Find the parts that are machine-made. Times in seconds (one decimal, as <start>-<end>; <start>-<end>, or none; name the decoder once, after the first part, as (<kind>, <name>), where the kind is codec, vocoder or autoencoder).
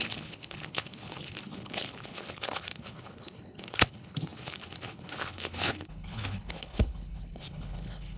0.0-8.2 (codec, HILCodec)